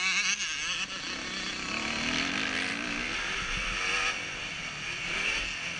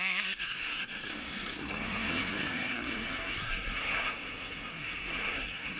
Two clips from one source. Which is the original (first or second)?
first